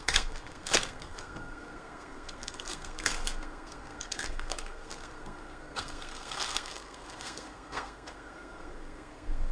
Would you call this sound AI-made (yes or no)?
yes